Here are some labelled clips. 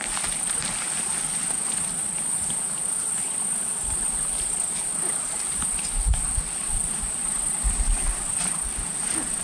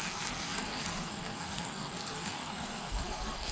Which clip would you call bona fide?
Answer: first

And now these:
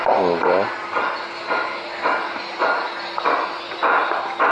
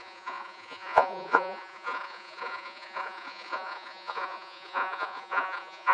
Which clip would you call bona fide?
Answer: first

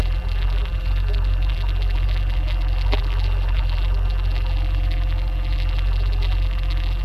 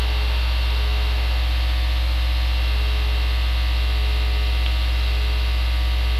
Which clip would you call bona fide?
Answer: second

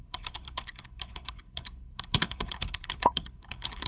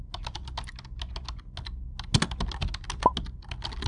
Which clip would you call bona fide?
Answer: second